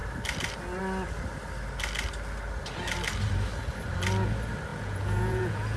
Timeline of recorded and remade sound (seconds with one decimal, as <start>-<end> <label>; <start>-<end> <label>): 0.0-4.7 recorded; 4.7-5.8 remade